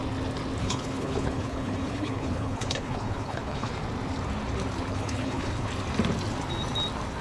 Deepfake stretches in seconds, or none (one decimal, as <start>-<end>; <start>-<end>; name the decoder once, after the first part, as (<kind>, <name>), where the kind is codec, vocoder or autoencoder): 0.6-3.7 (codec, HILCodec); 4.9-5.7